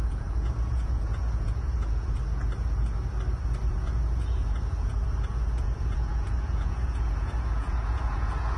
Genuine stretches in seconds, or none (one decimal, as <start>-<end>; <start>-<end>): 2.2-3.7